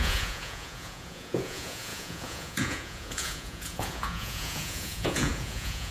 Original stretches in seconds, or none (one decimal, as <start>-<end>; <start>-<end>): none